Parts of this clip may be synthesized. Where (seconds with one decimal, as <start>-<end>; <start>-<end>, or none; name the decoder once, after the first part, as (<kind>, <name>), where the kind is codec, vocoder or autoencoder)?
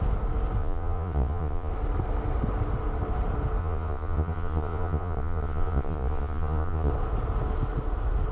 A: 0.6-1.7 (vocoder, Vocos); 3.6-6.9